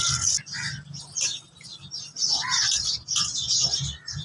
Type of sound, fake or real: real